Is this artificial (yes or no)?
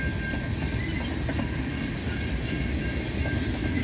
no